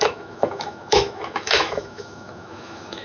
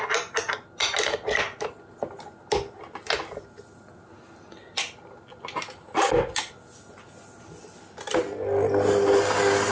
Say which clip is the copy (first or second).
first